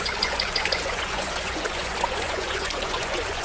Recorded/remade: remade